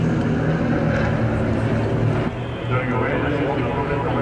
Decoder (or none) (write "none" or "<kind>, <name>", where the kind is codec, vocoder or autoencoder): none